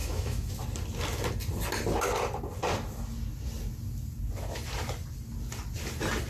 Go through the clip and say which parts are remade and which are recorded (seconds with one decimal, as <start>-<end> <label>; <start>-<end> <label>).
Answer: 0.0-0.6 remade; 0.6-6.3 recorded